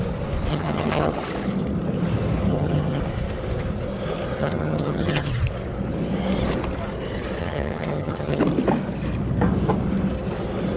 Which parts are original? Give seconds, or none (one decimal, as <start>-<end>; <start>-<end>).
0.0-0.5; 1.1-2.5; 3.0-4.4; 5.3-7.4; 8.4-10.8